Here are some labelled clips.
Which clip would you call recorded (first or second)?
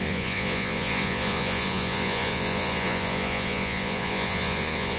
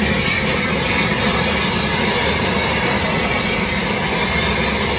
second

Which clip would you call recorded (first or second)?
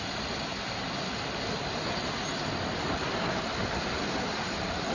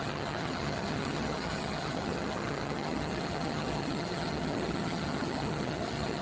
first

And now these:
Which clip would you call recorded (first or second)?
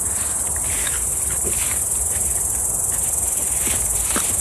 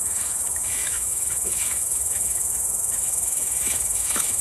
first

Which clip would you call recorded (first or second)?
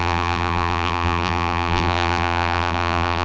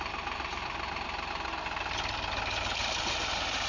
second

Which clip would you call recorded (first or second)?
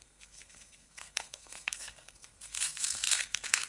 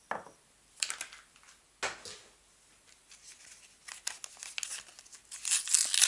second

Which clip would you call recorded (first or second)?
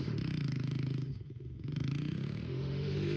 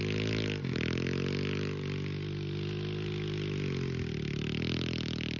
second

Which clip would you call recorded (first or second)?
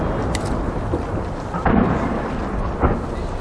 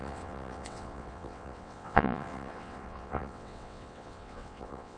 first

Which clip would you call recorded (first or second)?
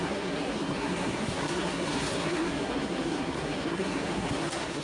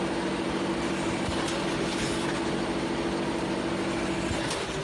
second